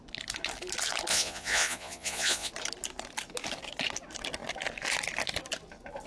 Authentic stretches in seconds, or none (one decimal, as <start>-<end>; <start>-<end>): 0.0-1.1; 2.5-6.1